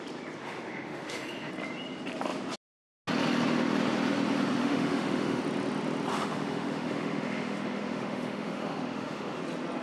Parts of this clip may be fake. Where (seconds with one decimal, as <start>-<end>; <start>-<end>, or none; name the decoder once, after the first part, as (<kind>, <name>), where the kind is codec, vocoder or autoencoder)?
0.4-1.5 (autoencoder, DAC-VAE); 4.6-5.4; 6.1-9.4